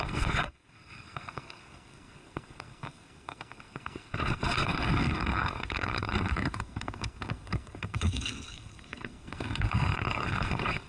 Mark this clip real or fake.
fake